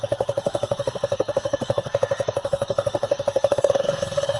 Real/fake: fake